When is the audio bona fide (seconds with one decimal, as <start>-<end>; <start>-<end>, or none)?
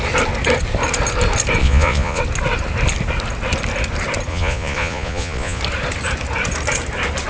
0.0-1.6; 2.2-4.3; 5.6-7.3